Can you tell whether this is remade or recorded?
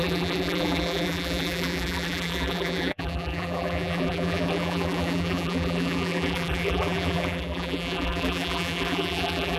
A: remade